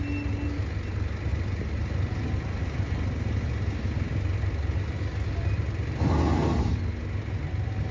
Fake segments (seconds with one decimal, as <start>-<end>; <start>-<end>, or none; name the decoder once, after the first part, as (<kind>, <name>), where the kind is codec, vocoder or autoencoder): none